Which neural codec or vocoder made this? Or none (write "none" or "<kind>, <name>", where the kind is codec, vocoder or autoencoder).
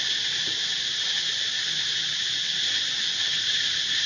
none